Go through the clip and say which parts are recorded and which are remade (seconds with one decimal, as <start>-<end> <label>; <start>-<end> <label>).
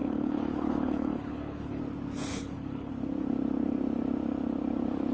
0.0-1.8 remade; 1.8-2.3 recorded; 2.3-2.9 remade; 2.9-5.1 recorded